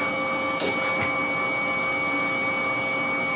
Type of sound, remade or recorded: recorded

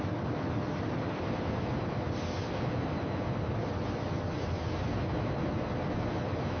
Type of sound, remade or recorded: recorded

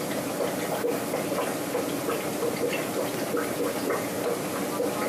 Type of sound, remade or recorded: recorded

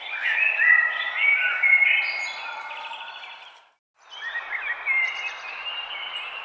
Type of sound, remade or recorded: recorded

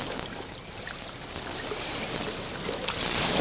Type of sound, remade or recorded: recorded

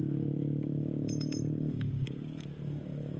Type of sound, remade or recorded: remade